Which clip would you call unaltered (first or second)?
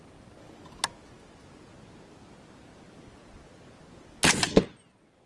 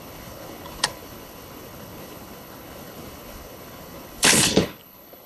first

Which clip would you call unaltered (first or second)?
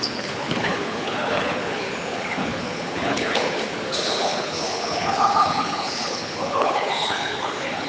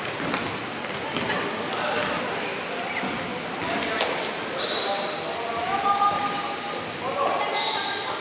second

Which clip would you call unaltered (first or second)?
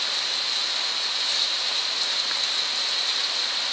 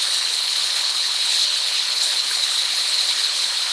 first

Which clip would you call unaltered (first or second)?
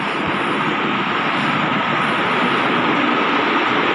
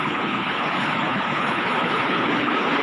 first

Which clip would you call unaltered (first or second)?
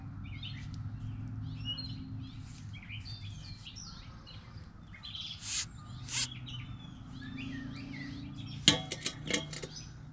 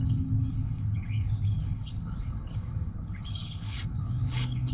first